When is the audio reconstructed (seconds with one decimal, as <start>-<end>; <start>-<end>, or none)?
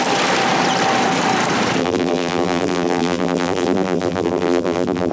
1.8-5.1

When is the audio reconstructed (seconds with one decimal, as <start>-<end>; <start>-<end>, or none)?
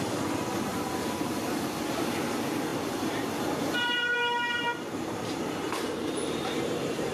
0.7-1.4; 2.7-7.1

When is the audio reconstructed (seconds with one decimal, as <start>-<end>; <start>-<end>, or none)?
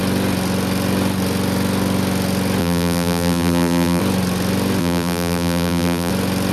2.6-4.0; 4.8-6.1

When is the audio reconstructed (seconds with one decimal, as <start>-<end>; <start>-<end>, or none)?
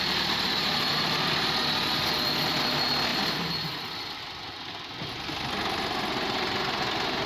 none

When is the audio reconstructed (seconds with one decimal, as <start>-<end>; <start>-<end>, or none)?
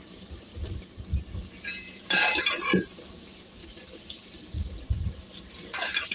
0.0-0.5; 1.6-3.6; 5.4-6.1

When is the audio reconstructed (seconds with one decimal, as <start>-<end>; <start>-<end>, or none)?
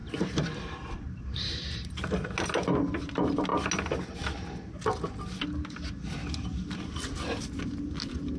0.0-2.0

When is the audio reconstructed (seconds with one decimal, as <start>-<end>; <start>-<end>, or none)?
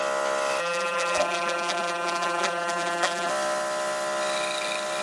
0.6-3.3